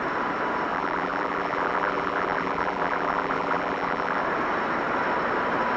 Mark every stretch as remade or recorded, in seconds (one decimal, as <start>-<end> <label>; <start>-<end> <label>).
0.0-0.7 recorded; 0.7-4.2 remade; 4.2-5.8 recorded